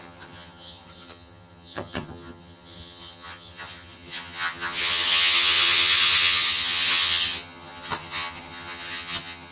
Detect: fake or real fake